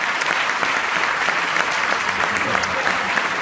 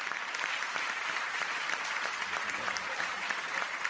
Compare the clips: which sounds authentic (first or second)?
first